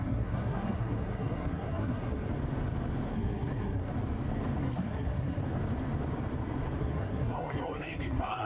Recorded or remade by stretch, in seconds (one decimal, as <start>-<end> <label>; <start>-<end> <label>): 0.0-2.3 remade; 2.3-3.1 recorded; 3.1-3.9 remade; 3.9-4.6 recorded; 4.6-5.4 remade; 5.4-6.8 recorded; 6.8-8.5 remade